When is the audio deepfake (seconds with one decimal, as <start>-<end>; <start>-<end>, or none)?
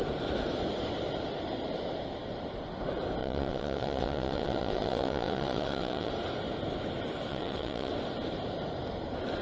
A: 3.2-6.1; 7.3-7.9